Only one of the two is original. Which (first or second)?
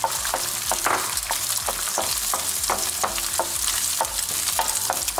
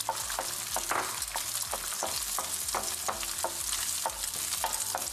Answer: second